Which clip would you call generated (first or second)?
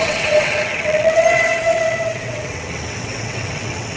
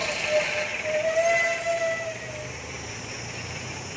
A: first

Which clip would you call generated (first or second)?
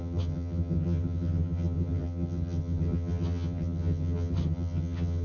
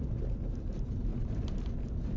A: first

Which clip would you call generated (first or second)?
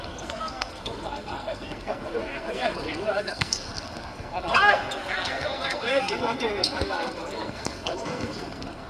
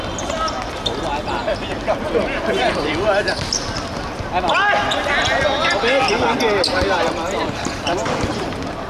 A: first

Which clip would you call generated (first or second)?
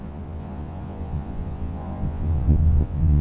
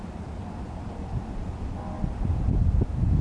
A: first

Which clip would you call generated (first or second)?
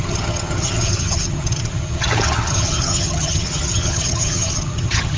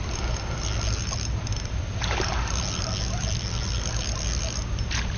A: first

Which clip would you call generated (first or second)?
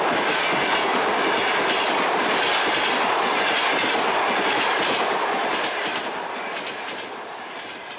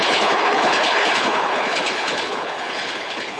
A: second